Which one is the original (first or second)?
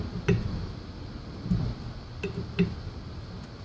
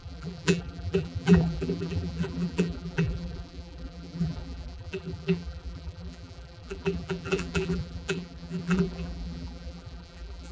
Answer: first